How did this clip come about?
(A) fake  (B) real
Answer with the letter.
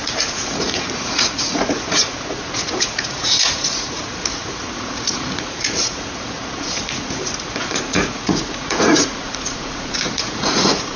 A